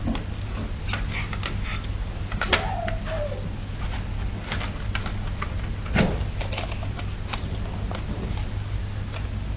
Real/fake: real